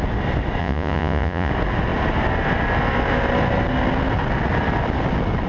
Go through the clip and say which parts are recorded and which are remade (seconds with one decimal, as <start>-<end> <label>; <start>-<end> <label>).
0.0-0.6 recorded; 0.6-1.5 remade; 1.5-5.5 recorded